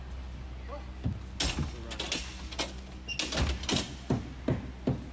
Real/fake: real